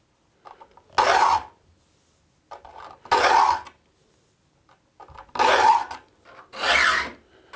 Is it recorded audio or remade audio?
recorded